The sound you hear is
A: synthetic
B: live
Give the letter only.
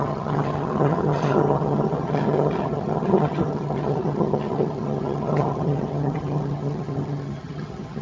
A